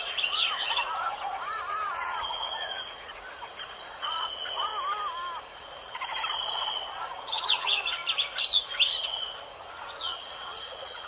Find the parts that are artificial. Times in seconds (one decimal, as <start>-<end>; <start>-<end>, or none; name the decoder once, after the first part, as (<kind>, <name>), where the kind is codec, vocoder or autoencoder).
0.0-4.7 (vocoder, Vocos); 5.5-6.1; 7.0-8.0; 9.6-11.1